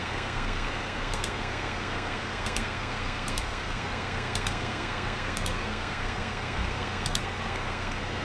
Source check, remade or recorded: remade